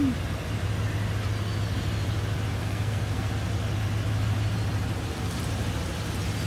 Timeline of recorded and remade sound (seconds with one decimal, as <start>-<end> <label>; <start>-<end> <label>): 0.0-2.6 recorded; 2.6-3.3 remade; 3.3-6.5 recorded